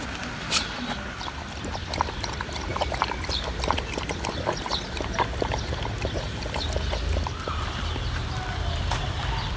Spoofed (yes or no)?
no